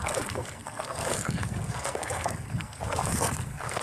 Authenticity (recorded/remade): remade